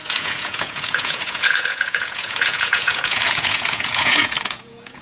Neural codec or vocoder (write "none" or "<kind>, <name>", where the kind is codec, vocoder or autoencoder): vocoder, Vocos